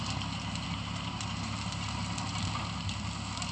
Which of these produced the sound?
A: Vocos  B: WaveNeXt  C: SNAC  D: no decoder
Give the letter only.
D